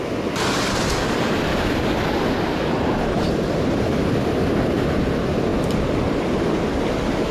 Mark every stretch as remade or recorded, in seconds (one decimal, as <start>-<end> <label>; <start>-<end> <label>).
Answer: 0.0-1.5 recorded; 1.5-2.7 remade; 2.7-7.3 recorded